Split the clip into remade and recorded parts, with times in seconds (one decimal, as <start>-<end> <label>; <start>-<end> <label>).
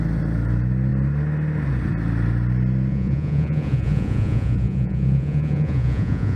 0.0-2.9 recorded; 2.9-6.4 remade